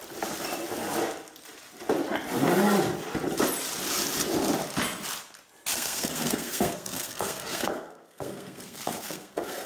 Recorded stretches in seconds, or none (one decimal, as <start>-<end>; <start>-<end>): 0.0-5.7